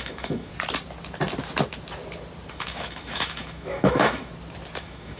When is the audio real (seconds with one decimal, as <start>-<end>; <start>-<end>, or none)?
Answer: 0.5-2.5; 4.3-4.8